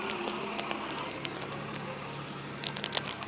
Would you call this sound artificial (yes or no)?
no